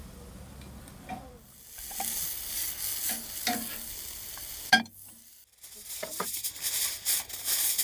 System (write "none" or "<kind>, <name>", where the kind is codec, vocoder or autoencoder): none